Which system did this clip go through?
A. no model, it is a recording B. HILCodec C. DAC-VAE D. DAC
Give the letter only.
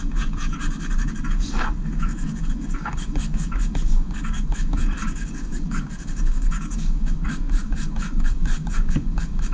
D